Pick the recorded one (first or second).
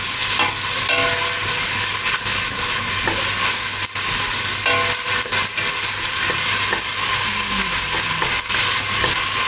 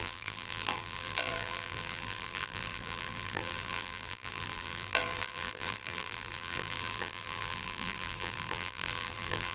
first